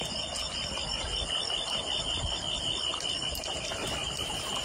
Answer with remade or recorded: recorded